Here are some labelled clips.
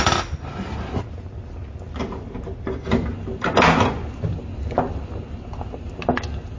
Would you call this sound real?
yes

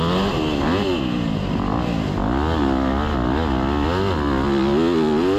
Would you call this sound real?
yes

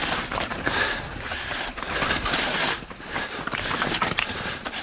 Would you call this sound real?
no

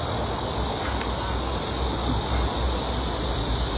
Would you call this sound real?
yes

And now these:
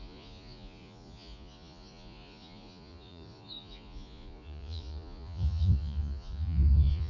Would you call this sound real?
no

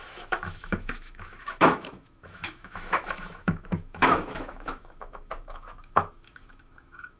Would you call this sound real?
no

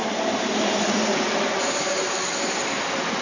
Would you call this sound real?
yes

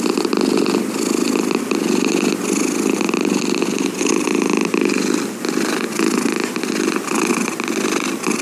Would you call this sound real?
yes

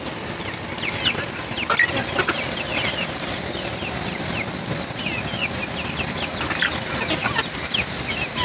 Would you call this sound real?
yes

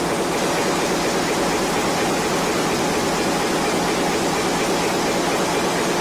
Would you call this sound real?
yes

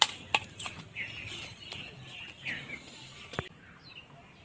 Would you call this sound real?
yes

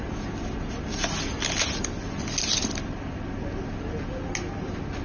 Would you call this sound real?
yes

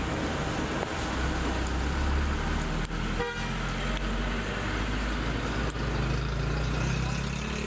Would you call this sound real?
yes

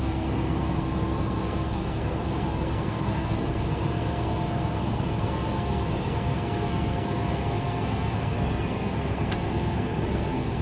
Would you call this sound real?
no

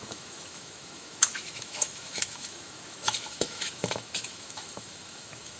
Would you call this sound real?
no